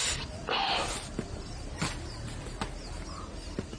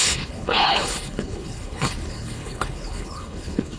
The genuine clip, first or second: first